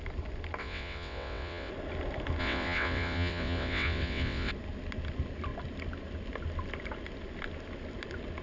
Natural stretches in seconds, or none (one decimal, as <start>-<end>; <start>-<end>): 0.0-0.6; 1.7-2.4; 4.5-8.4